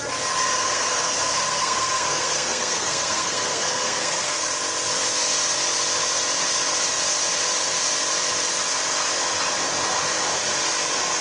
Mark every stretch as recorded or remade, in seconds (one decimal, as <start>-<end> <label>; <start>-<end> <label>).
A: 0.0-0.4 recorded; 0.4-4.5 remade; 4.5-11.2 recorded